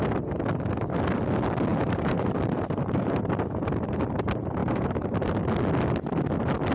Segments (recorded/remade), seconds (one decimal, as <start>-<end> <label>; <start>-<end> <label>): 0.0-1.7 recorded; 1.7-3.4 remade; 3.4-4.6 recorded; 4.6-5.4 remade; 5.4-6.7 recorded